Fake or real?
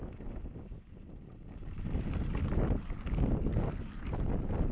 real